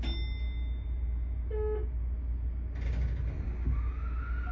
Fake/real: real